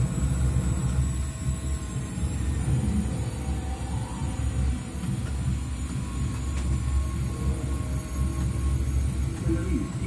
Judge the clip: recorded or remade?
recorded